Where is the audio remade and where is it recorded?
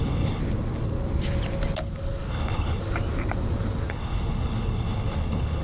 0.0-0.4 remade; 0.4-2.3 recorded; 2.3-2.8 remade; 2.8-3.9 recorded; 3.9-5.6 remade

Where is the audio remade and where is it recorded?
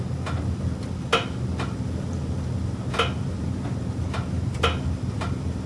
0.0-5.7 recorded